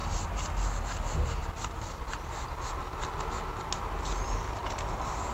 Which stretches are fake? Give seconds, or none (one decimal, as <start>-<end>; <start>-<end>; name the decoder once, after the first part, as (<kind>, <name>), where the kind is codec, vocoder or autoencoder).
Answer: 4.6-5.3 (vocoder, BigVGAN v2)